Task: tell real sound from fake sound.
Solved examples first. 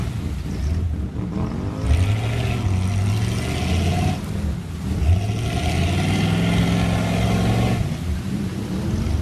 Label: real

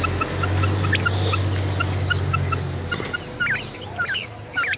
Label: real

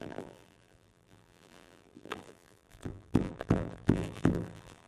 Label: fake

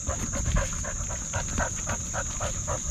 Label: real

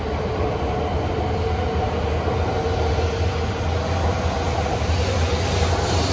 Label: real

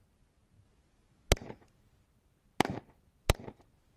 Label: real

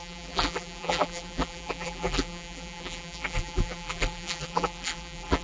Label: fake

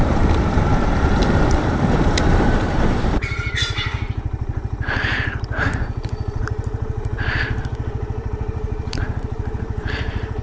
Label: fake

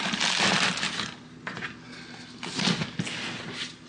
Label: real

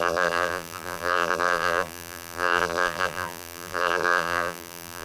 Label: fake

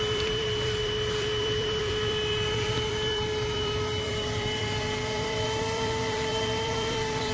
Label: fake